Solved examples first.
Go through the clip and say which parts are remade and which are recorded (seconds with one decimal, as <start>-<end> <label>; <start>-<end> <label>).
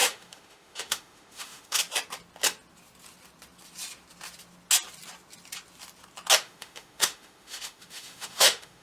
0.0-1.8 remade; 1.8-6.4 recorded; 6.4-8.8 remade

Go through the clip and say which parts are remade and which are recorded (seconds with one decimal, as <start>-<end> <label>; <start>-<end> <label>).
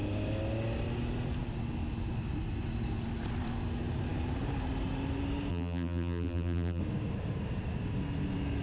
0.0-5.5 recorded; 5.5-6.8 remade; 6.8-8.6 recorded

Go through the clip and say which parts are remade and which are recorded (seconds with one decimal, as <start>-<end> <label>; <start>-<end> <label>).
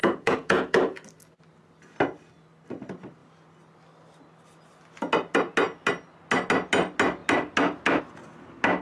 0.0-0.8 remade; 0.8-8.8 recorded